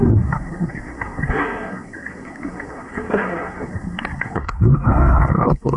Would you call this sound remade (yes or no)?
yes